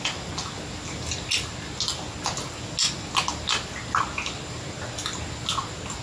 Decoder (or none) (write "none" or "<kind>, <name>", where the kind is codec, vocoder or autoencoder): none